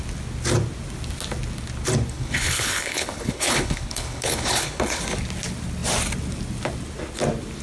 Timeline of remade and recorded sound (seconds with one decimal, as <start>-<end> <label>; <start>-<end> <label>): 0.0-2.1 recorded; 2.1-5.0 remade; 5.0-7.6 recorded